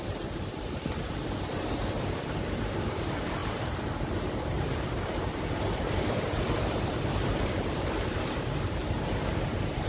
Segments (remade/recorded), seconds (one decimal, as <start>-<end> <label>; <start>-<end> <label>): 0.0-9.9 remade